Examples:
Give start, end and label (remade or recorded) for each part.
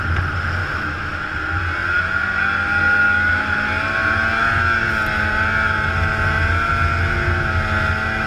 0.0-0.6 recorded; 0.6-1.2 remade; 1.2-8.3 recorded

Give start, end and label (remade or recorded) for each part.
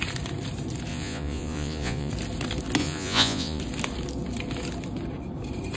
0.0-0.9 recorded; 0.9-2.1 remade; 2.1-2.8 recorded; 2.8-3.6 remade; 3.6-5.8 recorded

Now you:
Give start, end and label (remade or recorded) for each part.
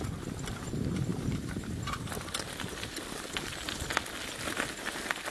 0.0-1.1 recorded; 1.1-3.5 remade; 3.5-5.3 recorded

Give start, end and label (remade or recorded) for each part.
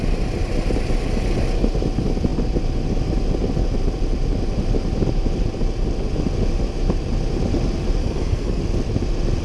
0.0-8.0 recorded; 8.0-8.6 remade; 8.6-9.4 recorded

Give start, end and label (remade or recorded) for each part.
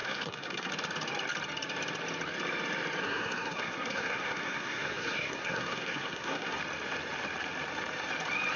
0.0-0.7 remade; 0.7-3.0 recorded; 3.0-6.6 remade; 6.6-8.6 recorded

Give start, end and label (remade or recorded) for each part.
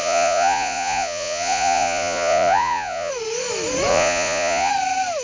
0.0-3.1 remade; 3.1-3.9 recorded; 3.9-4.7 remade; 4.7-5.2 recorded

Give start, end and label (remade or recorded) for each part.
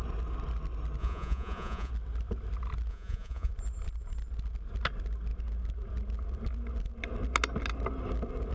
0.0-1.0 recorded; 1.0-1.9 remade; 1.9-2.9 recorded; 2.9-3.5 remade; 3.5-8.5 recorded